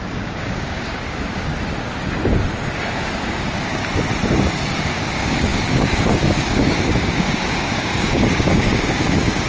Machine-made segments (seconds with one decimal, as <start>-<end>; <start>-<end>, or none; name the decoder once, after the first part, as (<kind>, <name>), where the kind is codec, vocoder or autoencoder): 0.0-1.5 (codec, DAC); 2.7-3.8; 4.8-9.5